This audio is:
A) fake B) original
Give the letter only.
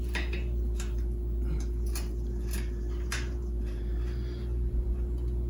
B